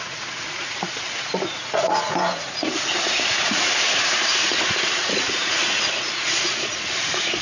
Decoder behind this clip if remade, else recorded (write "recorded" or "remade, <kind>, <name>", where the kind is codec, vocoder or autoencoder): remade, vocoder, Vocos